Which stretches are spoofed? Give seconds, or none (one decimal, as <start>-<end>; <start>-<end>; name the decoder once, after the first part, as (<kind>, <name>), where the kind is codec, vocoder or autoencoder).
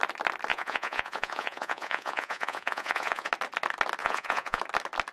0.5-3.3 (vocoder, Vocos); 4.0-4.6